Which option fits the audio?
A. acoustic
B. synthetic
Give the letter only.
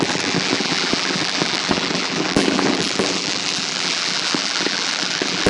B